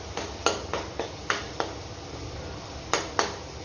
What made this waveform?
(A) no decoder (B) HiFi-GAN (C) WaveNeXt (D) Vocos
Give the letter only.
A